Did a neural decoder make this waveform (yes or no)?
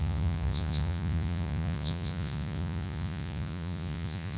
yes